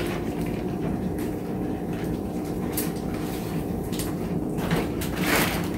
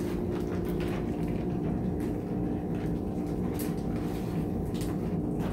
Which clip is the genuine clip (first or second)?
second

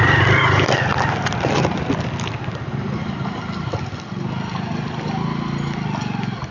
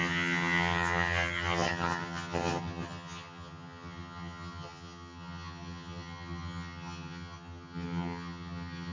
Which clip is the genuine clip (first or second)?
first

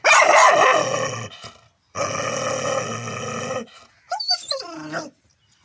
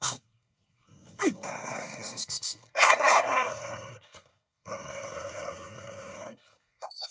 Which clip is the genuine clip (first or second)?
first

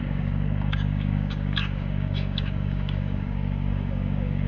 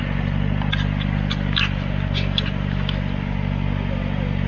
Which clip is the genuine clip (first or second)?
second